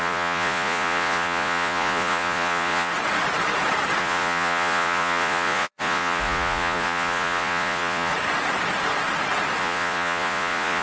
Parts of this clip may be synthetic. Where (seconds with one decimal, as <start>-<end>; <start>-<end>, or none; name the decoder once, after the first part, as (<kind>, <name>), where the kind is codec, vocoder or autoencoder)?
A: 0.0-2.9 (vocoder, Vocos); 4.0-8.1; 9.6-10.8